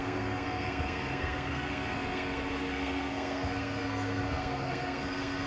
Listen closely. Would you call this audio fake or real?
fake